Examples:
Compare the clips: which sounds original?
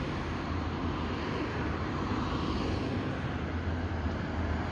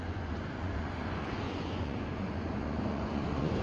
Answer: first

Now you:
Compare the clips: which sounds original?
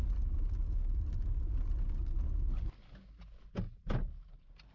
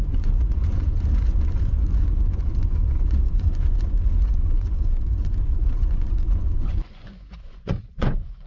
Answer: first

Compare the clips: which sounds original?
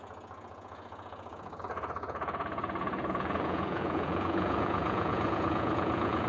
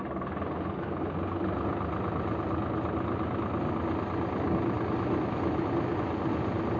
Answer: second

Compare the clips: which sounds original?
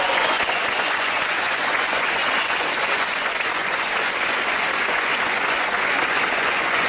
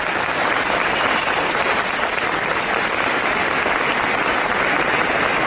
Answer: second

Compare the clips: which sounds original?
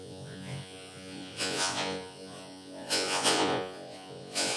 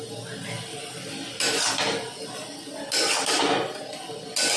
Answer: second